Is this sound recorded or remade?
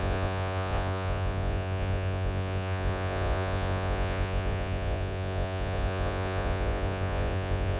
remade